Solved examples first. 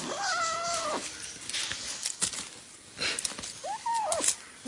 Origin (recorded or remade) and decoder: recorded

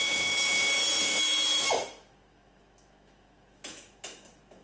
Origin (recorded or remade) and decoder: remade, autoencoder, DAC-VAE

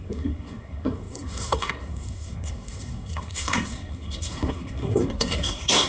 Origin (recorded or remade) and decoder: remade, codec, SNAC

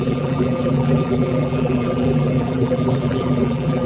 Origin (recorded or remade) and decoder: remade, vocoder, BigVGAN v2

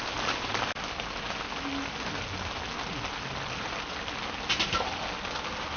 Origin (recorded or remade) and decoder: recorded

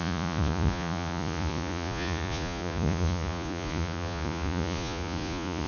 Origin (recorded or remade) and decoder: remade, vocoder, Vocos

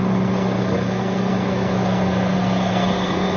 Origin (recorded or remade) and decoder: remade, codec, SNAC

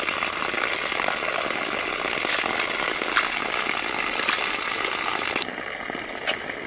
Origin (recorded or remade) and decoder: recorded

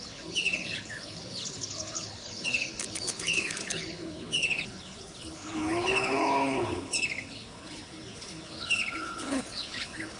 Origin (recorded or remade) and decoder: remade, codec, HILCodec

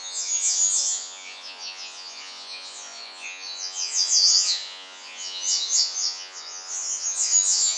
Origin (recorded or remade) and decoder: remade, vocoder, Vocos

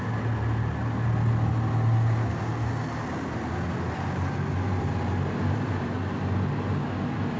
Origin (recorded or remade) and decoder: recorded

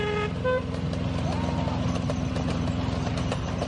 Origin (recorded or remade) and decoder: recorded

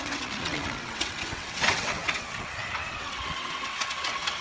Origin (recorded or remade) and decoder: remade, vocoder, WaveNeXt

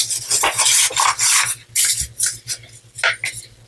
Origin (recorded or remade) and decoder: recorded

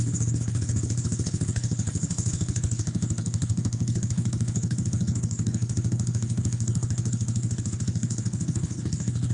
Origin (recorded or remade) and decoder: remade, codec, HILCodec